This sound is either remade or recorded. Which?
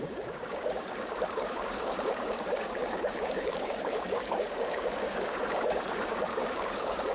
remade